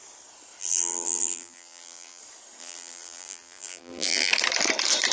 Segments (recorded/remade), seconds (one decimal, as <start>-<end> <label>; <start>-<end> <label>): 0.0-0.6 recorded; 0.6-2.2 remade; 2.2-2.6 recorded; 2.6-4.3 remade; 4.3-5.1 recorded

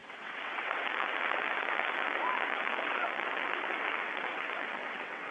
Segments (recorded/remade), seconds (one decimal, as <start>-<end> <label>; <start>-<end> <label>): 0.0-5.3 remade